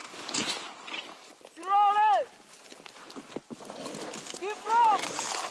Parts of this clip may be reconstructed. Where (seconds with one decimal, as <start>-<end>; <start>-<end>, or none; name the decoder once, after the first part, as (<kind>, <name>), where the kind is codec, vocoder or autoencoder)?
none